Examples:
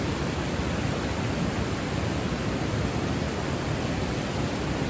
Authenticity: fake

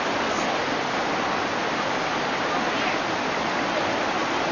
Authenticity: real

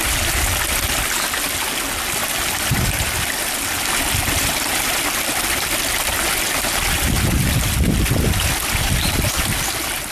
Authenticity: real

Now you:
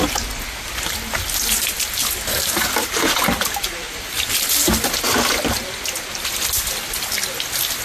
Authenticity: real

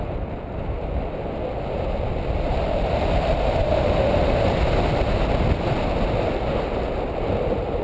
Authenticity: real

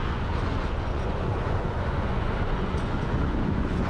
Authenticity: fake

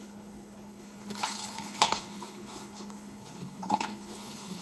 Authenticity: fake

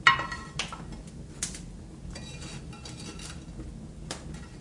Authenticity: real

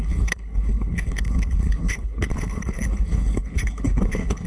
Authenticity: fake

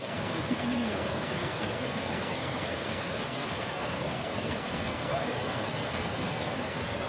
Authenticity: fake